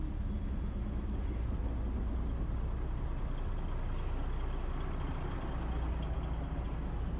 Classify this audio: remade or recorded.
recorded